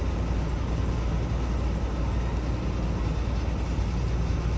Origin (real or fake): real